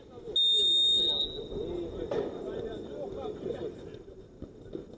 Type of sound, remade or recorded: recorded